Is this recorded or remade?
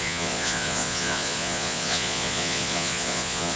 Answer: remade